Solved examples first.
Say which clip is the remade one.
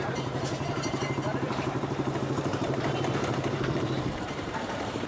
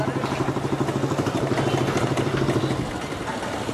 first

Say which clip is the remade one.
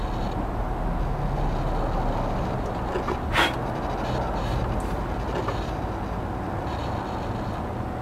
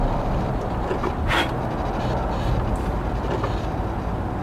second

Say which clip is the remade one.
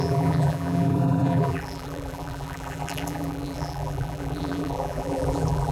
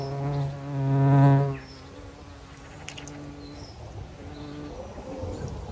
first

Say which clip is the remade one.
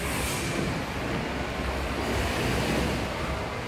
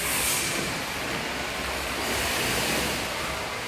second